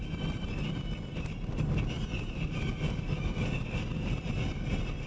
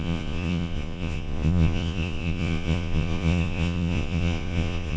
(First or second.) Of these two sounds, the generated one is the second